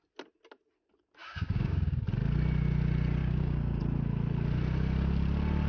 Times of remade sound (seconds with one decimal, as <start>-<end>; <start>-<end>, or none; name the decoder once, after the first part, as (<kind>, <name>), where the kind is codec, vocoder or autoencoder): 1.2-2.0 (codec, DAC); 3.2-3.8